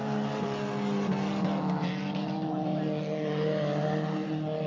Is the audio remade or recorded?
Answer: recorded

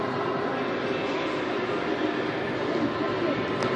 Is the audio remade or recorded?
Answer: recorded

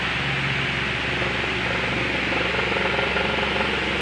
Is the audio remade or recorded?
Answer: recorded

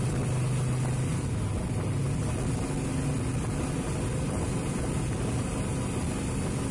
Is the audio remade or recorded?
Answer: recorded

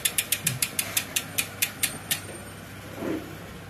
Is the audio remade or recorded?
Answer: recorded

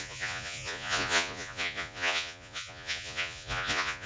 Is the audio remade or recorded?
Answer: remade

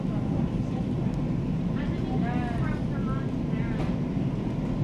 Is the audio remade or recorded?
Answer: recorded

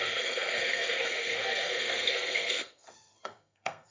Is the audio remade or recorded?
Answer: remade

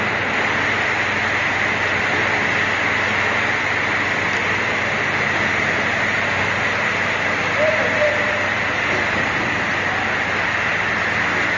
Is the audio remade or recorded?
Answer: recorded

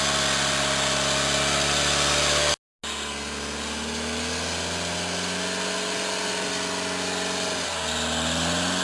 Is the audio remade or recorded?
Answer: recorded